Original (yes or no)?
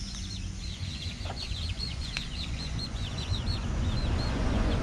no